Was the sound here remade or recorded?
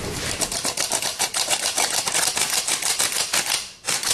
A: recorded